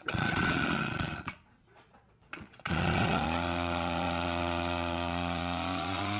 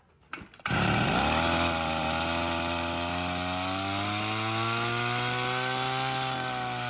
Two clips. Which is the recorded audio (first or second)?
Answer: second